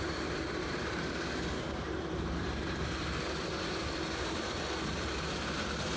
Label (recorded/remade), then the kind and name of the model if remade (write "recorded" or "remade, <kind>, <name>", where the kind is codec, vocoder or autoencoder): remade, vocoder, BigVGAN v2